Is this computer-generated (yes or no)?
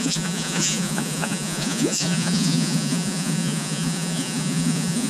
yes